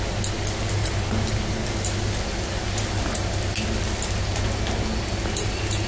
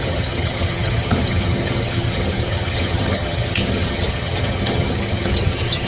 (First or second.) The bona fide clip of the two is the first